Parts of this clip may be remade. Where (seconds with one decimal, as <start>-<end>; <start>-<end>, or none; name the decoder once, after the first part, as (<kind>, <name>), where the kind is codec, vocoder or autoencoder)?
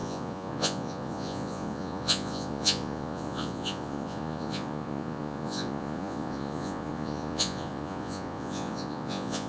0.0-9.5 (vocoder, Vocos)